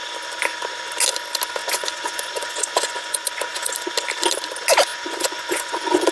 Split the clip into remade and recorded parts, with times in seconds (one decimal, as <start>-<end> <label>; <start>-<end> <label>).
0.0-1.6 recorded; 1.6-3.7 remade; 3.7-4.9 recorded; 4.9-6.1 remade